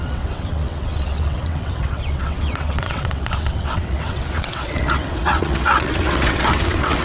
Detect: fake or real fake